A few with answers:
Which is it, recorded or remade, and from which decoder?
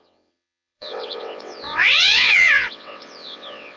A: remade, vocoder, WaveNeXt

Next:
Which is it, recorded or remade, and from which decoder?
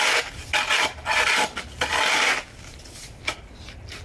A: recorded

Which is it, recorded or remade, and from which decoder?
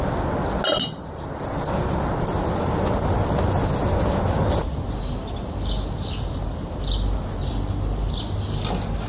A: recorded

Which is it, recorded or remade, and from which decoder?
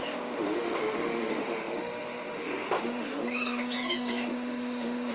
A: remade, autoencoder, DAC-VAE